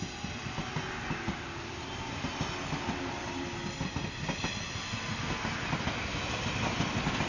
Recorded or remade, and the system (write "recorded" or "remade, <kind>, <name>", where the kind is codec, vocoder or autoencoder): recorded